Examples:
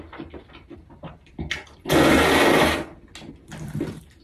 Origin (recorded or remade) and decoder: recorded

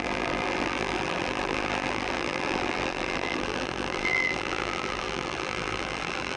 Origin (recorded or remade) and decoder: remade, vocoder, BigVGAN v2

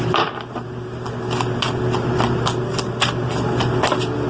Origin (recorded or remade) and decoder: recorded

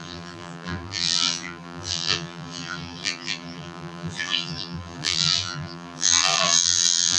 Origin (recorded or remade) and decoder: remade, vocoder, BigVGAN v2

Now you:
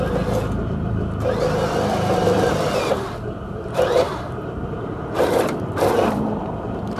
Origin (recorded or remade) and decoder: remade, vocoder, BigVGAN v2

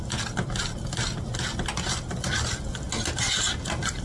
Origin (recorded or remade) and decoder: recorded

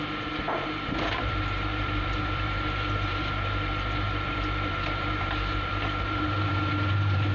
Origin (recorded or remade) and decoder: remade, vocoder, BigVGAN v2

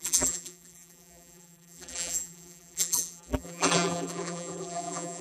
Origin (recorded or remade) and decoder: remade, vocoder, BigVGAN v2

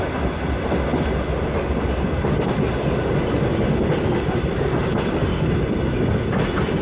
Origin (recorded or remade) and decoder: recorded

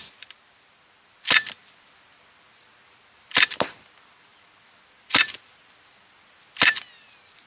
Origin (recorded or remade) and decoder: recorded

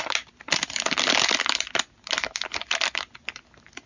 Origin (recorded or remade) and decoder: recorded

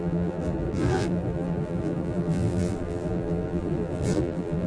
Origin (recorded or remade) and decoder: remade, vocoder, BigVGAN v2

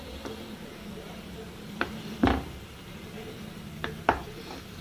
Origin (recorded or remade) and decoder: remade, vocoder, BigVGAN v2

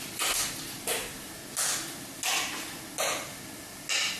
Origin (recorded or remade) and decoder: recorded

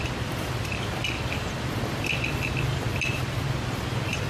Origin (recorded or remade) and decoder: remade, vocoder, BigVGAN v2